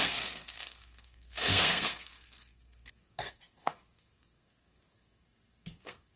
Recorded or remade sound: remade